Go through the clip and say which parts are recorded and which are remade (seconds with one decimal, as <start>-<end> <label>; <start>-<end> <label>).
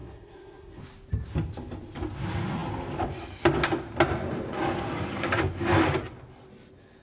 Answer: 0.0-0.8 remade; 0.8-7.0 recorded